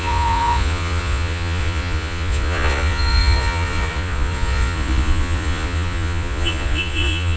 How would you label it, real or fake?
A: fake